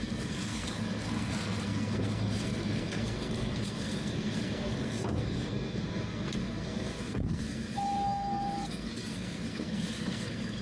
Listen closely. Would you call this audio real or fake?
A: fake